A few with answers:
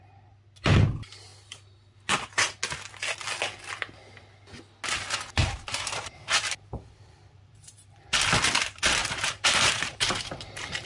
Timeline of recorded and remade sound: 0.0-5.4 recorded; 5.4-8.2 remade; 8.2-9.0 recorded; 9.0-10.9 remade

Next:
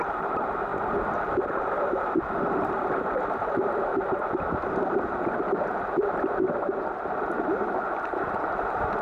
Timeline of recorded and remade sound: 0.0-0.7 remade; 0.7-1.6 recorded; 1.6-3.9 remade; 3.9-4.7 recorded; 4.7-9.0 remade

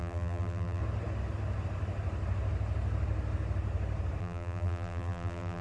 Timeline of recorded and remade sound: 0.0-0.8 remade; 0.8-4.2 recorded; 4.2-5.6 remade

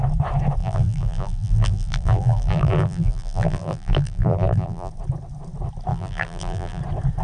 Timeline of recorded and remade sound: 0.0-0.6 recorded; 0.6-4.9 remade; 4.9-5.9 recorded; 5.9-6.8 remade; 6.8-7.2 recorded